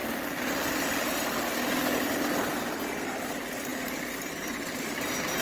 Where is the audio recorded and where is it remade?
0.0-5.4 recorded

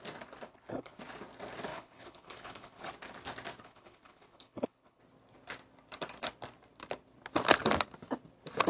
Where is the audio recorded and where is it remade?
0.0-0.5 recorded; 0.5-1.0 remade; 1.0-1.7 recorded; 1.7-2.9 remade; 2.9-3.6 recorded; 3.6-5.0 remade; 5.0-8.7 recorded

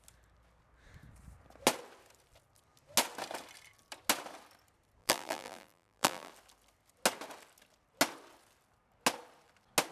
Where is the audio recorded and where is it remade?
0.0-5.0 recorded; 5.0-6.3 remade; 6.3-9.9 recorded

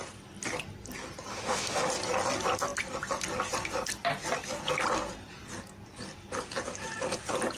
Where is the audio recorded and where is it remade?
0.0-1.3 recorded; 1.3-1.9 remade; 1.9-7.6 recorded

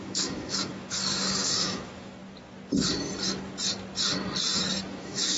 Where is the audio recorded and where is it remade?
0.0-2.2 remade; 2.2-4.9 recorded; 4.9-5.4 remade

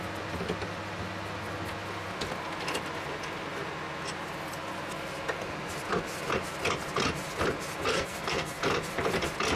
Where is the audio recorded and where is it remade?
0.0-7.9 recorded; 7.9-8.6 remade; 8.6-9.6 recorded

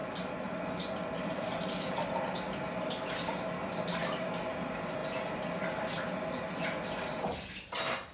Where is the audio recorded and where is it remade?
0.0-8.1 recorded